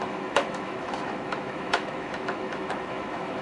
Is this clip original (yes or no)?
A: no